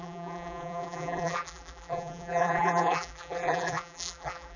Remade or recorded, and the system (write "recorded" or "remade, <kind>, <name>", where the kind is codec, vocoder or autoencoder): remade, vocoder, BigVGAN v2